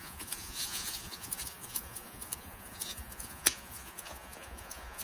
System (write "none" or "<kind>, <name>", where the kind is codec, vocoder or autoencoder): vocoder, Vocos